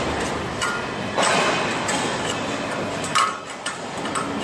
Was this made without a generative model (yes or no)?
no